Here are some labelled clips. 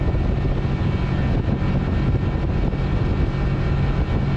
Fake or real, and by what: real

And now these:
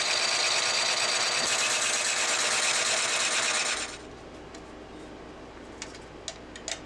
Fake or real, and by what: real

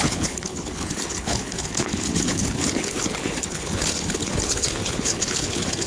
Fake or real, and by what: fake, codec, HILCodec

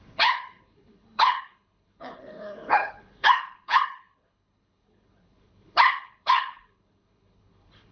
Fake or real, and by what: fake, codec, HILCodec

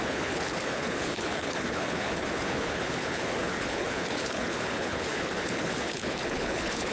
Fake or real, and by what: fake, codec, HILCodec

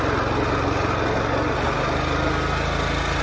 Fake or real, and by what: real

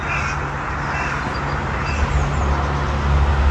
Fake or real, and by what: real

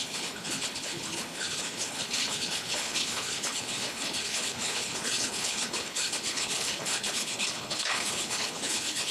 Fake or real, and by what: fake, codec, HILCodec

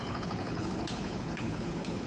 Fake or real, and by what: fake, codec, HILCodec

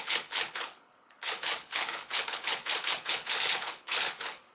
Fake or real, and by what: fake, codec, HILCodec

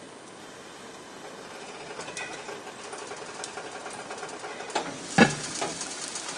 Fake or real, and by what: real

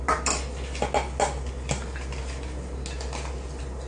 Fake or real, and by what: real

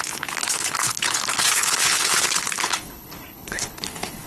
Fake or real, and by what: fake, codec, HILCodec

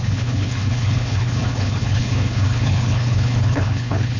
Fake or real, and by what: fake, codec, HILCodec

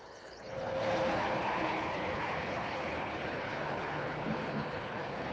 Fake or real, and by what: fake, codec, HILCodec